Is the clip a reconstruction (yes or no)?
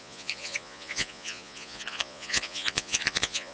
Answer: yes